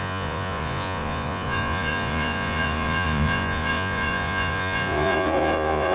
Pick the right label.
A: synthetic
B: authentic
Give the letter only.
A